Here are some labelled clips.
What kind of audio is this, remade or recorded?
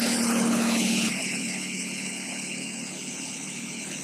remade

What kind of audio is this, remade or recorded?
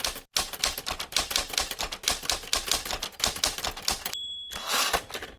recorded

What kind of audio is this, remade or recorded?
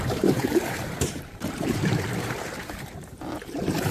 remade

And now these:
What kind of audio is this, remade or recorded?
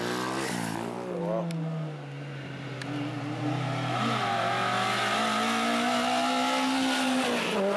recorded